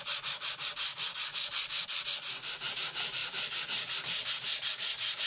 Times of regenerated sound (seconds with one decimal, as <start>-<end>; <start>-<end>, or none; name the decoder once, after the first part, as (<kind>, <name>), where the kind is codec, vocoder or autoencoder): 0.0-0.9 (vocoder, BigVGAN v2); 2.7-5.3